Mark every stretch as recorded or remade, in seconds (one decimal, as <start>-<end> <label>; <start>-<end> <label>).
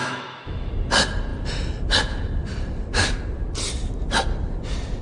0.0-0.7 remade; 0.7-5.0 recorded